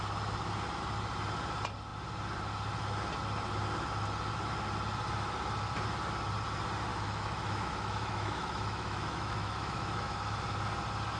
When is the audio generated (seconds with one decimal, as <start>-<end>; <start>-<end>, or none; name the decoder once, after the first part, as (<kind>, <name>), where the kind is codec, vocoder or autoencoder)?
6.9-10.4 (autoencoder, DAC-VAE)